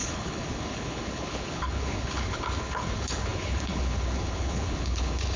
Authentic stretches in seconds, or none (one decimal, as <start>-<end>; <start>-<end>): none